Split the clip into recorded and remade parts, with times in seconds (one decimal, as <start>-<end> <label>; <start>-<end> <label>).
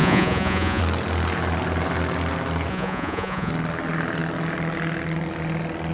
0.0-0.8 remade; 0.8-2.7 recorded; 2.7-3.5 remade; 3.5-5.9 recorded